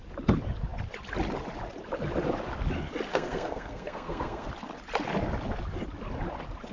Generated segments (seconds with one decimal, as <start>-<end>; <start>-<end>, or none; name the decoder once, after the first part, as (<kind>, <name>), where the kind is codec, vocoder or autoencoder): 3.1-4.5 (codec, SNAC)